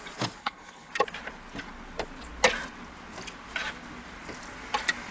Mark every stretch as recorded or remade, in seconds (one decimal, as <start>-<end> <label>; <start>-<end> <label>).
0.0-0.4 recorded; 0.4-0.9 remade; 0.9-5.1 recorded